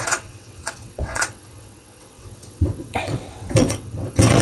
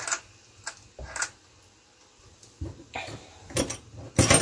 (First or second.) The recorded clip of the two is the second